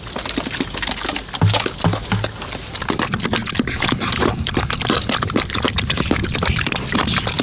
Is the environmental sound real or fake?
real